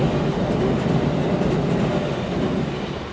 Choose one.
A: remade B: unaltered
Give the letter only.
B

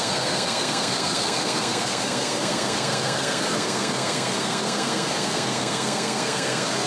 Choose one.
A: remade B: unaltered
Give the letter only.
A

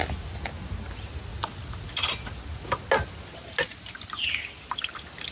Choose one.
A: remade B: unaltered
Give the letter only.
B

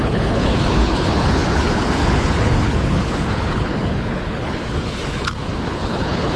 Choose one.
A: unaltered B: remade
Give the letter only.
B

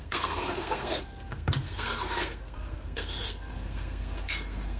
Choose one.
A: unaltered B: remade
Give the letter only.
B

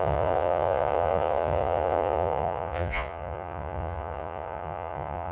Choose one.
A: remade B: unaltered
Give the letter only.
A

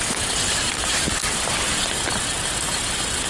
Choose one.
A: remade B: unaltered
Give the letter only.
B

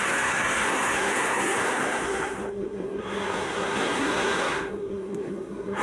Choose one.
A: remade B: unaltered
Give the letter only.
A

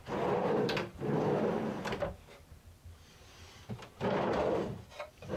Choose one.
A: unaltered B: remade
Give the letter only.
B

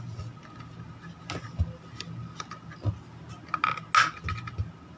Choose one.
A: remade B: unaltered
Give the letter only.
B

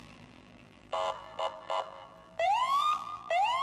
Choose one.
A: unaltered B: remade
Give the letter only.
B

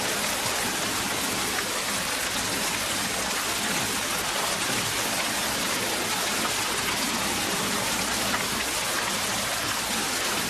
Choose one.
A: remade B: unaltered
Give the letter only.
B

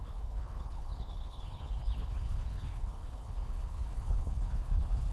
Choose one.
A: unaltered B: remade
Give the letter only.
B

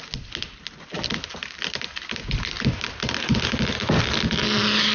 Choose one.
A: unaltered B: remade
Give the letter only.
A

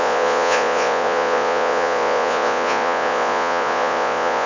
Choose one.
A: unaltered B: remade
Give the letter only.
B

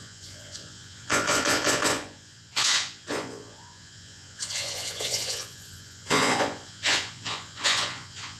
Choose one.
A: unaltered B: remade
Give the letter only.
B